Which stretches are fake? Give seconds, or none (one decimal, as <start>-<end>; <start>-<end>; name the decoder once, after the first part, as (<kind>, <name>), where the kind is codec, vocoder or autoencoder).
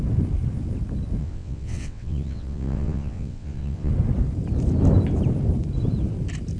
1.2-3.9 (vocoder, WaveNeXt)